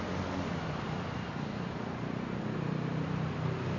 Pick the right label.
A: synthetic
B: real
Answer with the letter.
B